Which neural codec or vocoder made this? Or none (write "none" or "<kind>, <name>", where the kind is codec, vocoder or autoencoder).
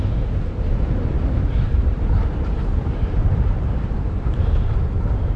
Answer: vocoder, BigVGAN v2